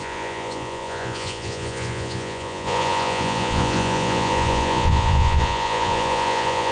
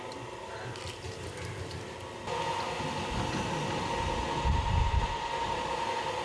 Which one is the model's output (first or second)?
first